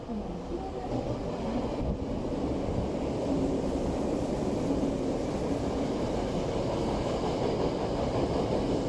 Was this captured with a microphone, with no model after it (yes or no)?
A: yes